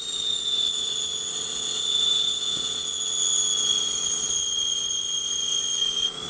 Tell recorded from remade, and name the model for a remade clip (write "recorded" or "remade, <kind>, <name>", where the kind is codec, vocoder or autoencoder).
remade, vocoder, Vocos